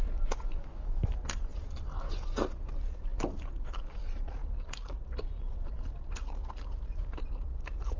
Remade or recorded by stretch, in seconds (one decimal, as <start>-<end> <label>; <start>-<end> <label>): 0.0-0.6 recorded; 0.6-1.1 remade; 1.1-8.0 recorded